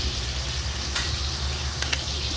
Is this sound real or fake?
real